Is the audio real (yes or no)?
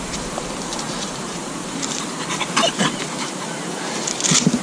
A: no